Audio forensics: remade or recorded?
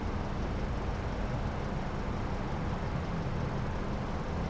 recorded